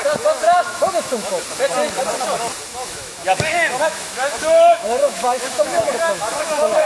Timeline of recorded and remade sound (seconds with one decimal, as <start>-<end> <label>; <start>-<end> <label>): 0.0-0.4 recorded; 0.4-1.4 remade; 1.4-2.7 recorded; 2.7-6.9 remade

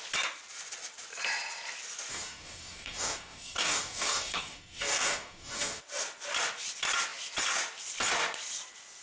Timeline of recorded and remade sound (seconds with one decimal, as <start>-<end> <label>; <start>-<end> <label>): 0.0-2.1 recorded; 2.1-5.8 remade; 5.8-9.0 recorded

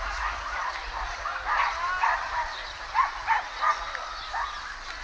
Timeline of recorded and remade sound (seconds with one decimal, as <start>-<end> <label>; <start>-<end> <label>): 0.0-5.0 recorded

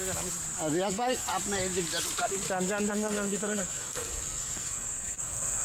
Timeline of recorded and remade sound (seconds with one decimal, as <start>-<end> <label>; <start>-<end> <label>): 0.0-0.9 recorded; 0.9-1.3 remade; 1.3-2.9 recorded; 2.9-5.6 remade

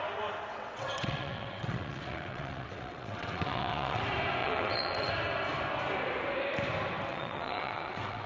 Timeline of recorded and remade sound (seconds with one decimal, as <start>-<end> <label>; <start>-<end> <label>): 0.0-0.5 recorded; 0.5-4.0 remade; 4.0-4.4 recorded; 4.4-5.1 remade; 5.1-7.1 recorded; 7.1-8.3 remade

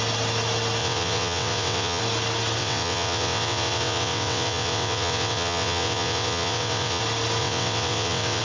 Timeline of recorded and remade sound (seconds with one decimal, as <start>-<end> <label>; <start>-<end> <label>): 0.0-0.8 recorded; 0.8-2.0 remade; 2.0-2.6 recorded; 2.6-7.0 remade; 7.0-7.4 recorded; 7.4-8.4 remade

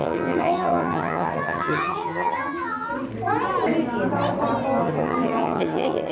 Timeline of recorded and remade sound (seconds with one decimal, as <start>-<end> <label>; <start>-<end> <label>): 0.0-2.9 remade; 2.9-4.8 recorded; 4.8-6.1 remade

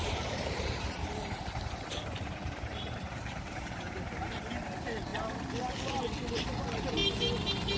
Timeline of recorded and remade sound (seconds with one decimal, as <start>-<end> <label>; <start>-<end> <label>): 0.0-4.3 remade; 4.3-7.8 recorded